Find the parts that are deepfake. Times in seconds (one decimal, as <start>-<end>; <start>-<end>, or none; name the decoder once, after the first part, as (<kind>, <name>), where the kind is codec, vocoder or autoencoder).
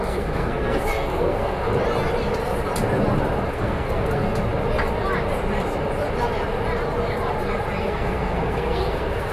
0.0-1.7 (codec, SNAC); 3.5-4.4; 7.8-9.3